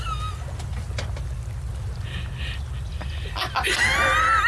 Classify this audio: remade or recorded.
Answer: recorded